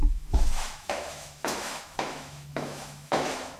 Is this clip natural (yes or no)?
no